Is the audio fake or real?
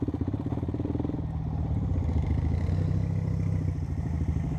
real